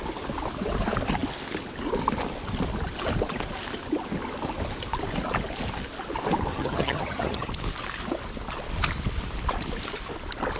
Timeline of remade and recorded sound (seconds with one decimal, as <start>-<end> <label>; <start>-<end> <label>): 0.0-6.5 recorded; 6.5-7.5 remade; 7.5-10.6 recorded